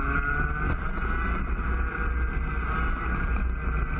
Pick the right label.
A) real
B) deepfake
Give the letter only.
A